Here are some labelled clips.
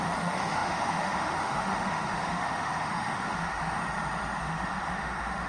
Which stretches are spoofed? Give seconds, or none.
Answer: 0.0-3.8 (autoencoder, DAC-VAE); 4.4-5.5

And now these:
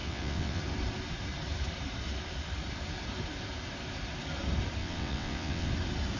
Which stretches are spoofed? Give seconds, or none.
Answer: 0.0-0.6 (vocoder, WaveNeXt); 4.8-5.7

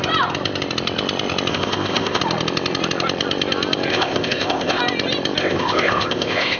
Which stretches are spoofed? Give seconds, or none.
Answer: 1.5-2.2 (codec, ZipCodec); 3.9-4.8; 5.4-6.6